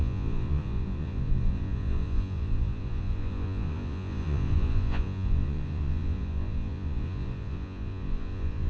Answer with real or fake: fake